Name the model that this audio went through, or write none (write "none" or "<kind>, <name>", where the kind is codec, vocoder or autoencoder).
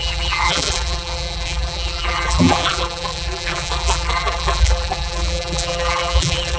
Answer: vocoder, BigVGAN v2